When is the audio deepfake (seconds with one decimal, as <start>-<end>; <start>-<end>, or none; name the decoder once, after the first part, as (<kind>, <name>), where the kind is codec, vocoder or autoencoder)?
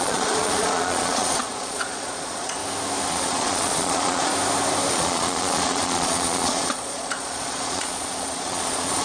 0.0-2.6 (vocoder, Vocos); 3.1-4.3; 4.9-9.0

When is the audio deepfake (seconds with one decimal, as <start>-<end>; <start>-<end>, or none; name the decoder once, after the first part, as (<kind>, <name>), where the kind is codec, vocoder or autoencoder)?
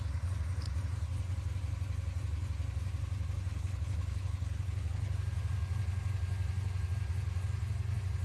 3.5-5.1 (codec, HILCodec)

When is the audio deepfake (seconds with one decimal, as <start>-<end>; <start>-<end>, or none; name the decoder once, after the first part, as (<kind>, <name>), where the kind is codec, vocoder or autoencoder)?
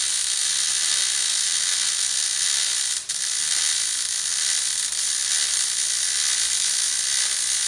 0.4-0.9 (vocoder, BigVGAN v2); 2.7-3.7; 4.3-5.3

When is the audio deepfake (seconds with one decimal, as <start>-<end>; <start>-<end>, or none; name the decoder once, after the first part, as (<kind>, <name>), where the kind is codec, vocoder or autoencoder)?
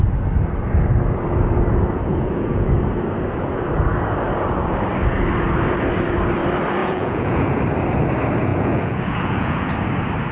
2.1-2.7 (vocoder, Vocos); 6.8-7.6; 8.5-9.7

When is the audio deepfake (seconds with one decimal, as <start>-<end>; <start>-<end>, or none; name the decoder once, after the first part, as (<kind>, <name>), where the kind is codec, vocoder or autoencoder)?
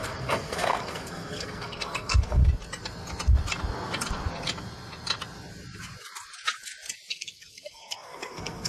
0.0-2.4 (codec, SNAC); 7.1-8.7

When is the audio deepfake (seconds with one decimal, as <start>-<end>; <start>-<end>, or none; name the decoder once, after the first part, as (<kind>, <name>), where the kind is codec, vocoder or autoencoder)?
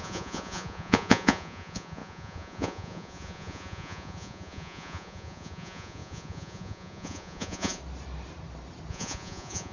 0.0-7.8 (vocoder, Vocos); 8.9-9.7